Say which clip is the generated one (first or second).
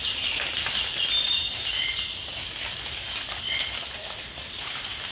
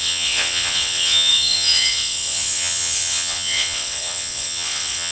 second